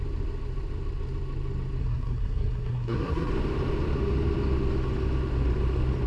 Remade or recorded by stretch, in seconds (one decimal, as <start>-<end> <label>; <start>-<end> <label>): 0.0-1.8 recorded; 1.8-3.3 remade; 3.3-6.1 recorded